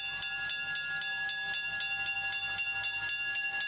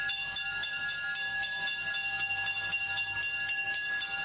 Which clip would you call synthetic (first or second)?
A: second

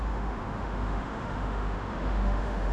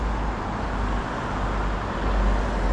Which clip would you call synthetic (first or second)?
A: first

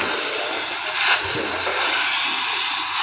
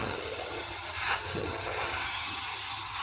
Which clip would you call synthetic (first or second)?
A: second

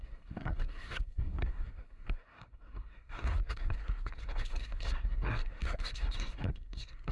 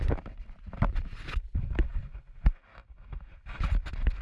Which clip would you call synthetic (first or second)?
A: first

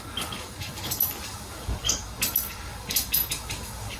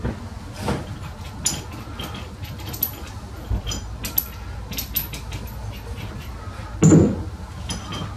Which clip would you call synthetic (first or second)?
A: first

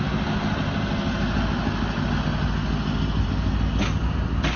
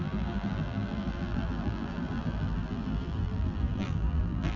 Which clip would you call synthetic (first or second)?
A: second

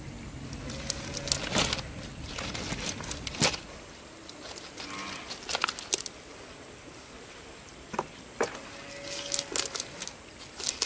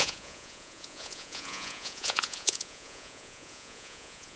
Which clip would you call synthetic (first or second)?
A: second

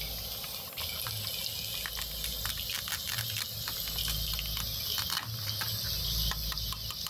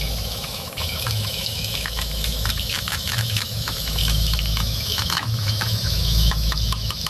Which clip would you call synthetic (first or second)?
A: second